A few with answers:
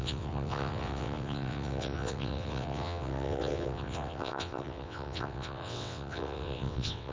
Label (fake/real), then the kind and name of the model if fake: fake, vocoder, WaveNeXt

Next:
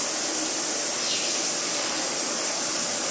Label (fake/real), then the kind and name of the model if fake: real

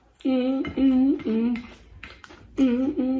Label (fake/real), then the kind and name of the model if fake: real